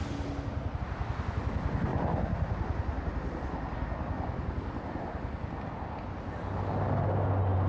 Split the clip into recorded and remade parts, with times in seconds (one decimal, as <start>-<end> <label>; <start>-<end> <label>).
0.0-7.7 recorded